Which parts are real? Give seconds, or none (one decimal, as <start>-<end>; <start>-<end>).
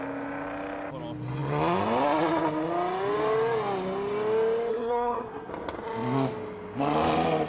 0.0-4.7; 5.5-7.5